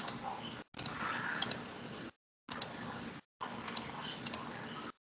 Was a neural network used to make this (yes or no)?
no